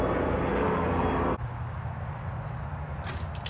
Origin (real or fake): real